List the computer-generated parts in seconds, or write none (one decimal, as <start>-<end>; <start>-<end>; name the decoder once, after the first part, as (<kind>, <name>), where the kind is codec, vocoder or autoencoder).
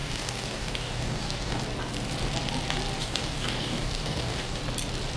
0.0-1.6 (codec, DAC); 3.0-4.6